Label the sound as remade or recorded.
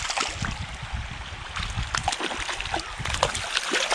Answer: recorded